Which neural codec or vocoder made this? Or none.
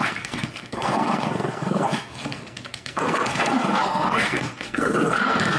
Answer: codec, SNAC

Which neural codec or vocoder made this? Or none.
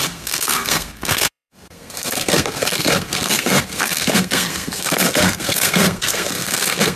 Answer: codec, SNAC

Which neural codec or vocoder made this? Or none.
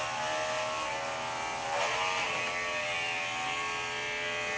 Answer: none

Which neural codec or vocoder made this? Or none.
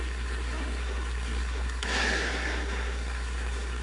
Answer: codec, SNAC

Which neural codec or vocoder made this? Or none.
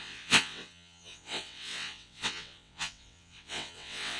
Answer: vocoder, WaveNeXt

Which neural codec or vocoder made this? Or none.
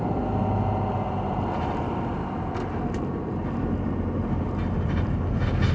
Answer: none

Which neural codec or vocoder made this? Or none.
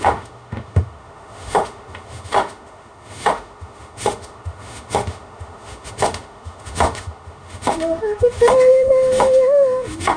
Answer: autoencoder, DAC-VAE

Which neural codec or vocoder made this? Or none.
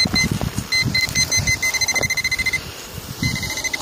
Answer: none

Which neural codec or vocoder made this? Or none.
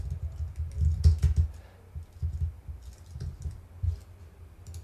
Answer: none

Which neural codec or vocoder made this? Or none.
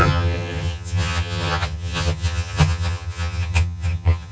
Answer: vocoder, HiFi-GAN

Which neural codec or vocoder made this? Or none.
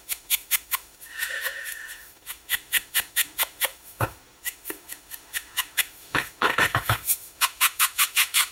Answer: autoencoder, DAC-VAE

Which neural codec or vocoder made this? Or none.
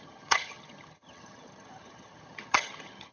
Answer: vocoder, HiFi-GAN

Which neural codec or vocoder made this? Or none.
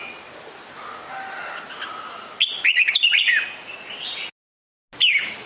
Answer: none